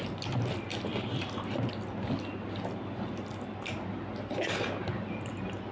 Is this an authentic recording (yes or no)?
yes